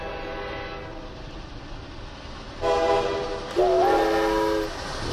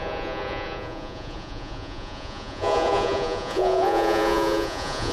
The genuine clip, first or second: first